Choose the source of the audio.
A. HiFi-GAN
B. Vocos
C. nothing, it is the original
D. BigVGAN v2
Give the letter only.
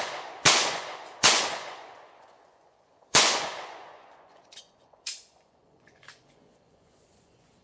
B